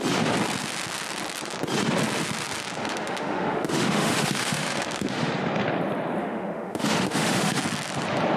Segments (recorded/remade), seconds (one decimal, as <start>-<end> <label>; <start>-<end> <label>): 0.0-2.8 recorded; 2.8-5.3 remade; 5.3-6.2 recorded; 6.2-7.6 remade; 7.6-8.4 recorded